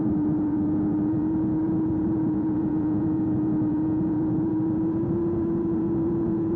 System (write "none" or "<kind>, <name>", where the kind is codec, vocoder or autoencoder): vocoder, Vocos